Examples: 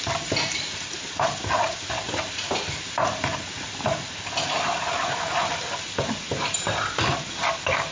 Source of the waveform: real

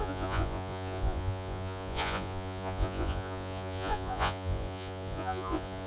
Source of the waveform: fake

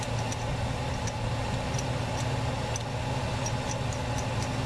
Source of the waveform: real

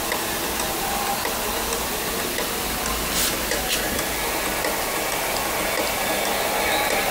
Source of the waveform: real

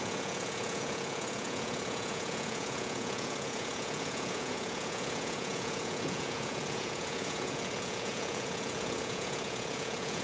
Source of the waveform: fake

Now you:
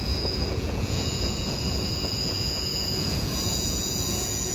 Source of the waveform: fake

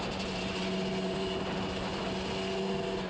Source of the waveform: real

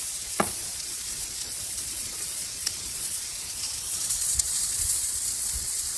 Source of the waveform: fake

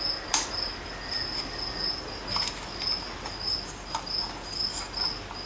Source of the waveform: real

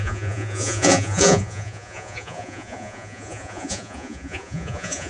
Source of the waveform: fake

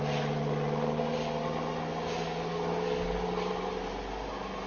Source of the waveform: real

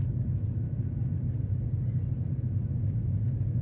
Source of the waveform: real